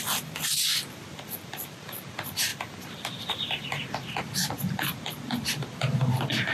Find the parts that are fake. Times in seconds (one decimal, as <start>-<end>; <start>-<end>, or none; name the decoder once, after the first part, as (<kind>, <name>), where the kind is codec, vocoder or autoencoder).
none

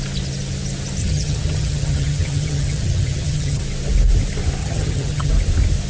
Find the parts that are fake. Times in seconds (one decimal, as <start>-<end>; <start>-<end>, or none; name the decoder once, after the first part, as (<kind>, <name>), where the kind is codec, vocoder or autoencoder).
1.0-3.6 (vocoder, HiFi-GAN); 4.6-5.3